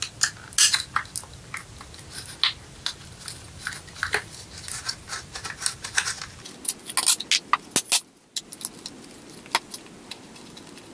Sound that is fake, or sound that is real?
real